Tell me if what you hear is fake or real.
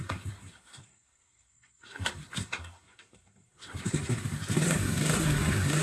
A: fake